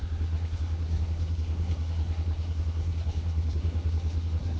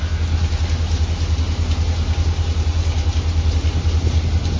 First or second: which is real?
second